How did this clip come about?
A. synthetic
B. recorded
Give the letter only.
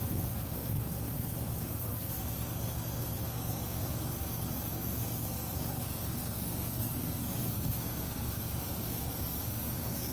A